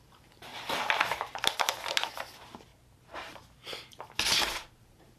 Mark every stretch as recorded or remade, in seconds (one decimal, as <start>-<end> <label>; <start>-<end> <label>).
0.0-0.5 remade; 0.5-2.1 recorded; 2.1-2.7 remade; 2.7-4.8 recorded; 4.8-5.2 remade